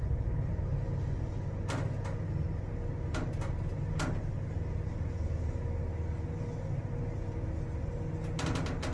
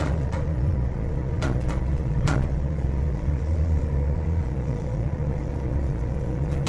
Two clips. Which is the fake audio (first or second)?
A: second